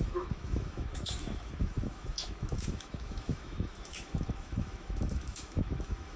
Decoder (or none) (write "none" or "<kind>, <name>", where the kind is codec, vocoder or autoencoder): autoencoder, DAC-VAE